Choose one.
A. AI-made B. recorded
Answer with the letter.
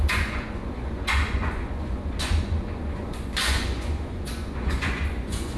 A